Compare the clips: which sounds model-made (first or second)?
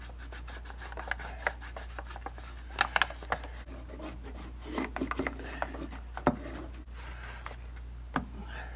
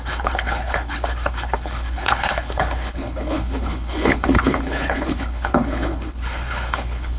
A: second